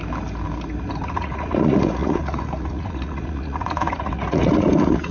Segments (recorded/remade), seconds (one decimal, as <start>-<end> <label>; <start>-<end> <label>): 0.0-1.0 recorded; 1.0-5.1 remade